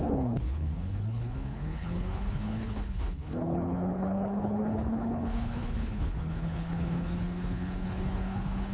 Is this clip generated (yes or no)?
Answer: yes